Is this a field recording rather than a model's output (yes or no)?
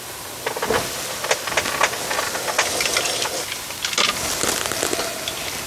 yes